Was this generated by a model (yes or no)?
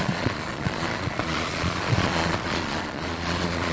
yes